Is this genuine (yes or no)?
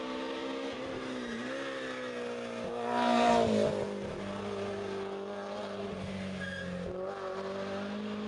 yes